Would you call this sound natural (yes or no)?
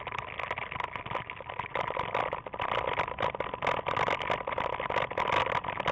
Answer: yes